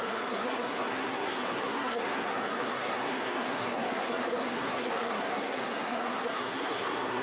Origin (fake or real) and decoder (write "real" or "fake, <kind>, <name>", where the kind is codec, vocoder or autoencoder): fake, codec, SNAC